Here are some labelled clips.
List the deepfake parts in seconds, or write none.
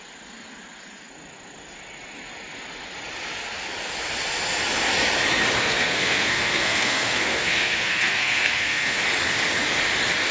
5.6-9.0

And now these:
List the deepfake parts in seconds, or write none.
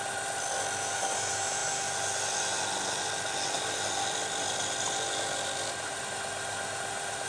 none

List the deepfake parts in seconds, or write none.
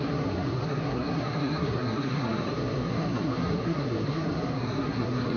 0.0-5.4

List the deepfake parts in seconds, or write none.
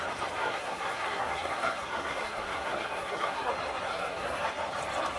0.4-3.5; 3.9-4.4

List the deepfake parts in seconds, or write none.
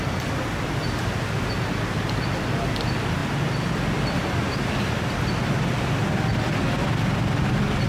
none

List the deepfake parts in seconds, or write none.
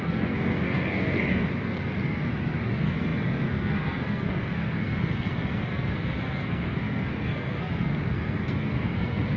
0.0-9.4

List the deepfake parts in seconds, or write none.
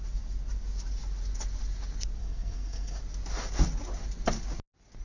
2.2-3.0